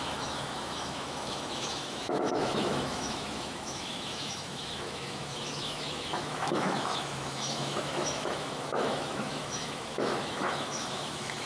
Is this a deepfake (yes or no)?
yes